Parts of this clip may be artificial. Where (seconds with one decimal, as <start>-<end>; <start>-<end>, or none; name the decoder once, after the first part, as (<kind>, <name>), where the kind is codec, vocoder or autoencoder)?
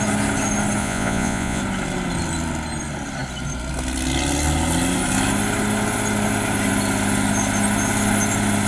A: 0.8-1.6 (vocoder, Vocos)